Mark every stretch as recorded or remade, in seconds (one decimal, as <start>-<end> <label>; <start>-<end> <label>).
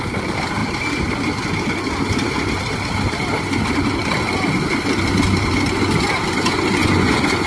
0.0-6.8 recorded; 6.8-7.5 remade